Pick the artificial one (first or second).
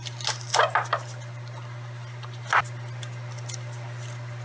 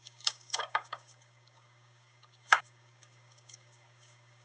second